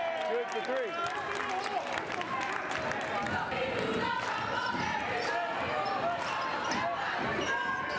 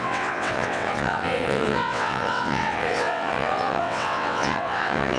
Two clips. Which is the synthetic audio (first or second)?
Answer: second